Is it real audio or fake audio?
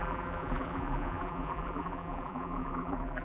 fake